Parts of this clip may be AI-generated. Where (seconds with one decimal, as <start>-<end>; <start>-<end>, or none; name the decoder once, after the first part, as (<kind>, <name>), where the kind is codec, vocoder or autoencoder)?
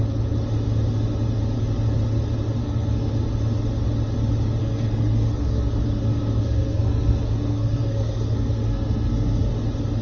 2.6-3.1 (codec, SNAC); 4.6-9.5